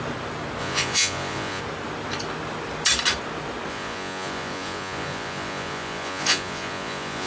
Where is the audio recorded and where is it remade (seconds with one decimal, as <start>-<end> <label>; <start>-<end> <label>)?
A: 0.0-0.6 recorded; 0.6-1.6 remade; 1.6-3.7 recorded; 3.7-7.3 remade